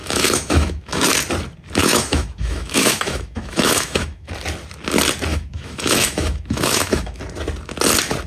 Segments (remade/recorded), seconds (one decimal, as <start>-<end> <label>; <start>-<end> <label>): 0.0-1.1 remade; 1.1-1.8 recorded; 1.8-4.3 remade; 4.3-5.3 recorded; 5.3-7.2 remade; 7.2-8.3 recorded